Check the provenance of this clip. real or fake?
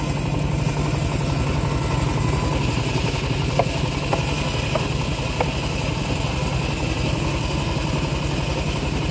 real